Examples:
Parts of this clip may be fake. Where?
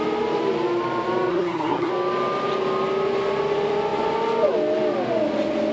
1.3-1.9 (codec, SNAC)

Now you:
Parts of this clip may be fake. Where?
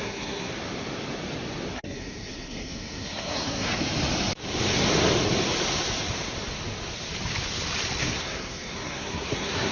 0.0-0.5 (codec, SNAC); 1.7-3.7; 8.0-9.7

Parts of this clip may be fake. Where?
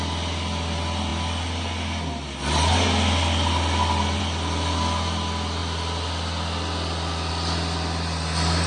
none